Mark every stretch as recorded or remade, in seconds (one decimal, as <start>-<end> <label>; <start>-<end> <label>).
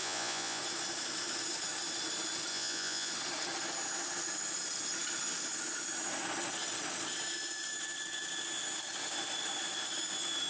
0.0-0.6 remade; 0.6-2.5 recorded; 2.5-3.1 remade; 3.1-10.5 recorded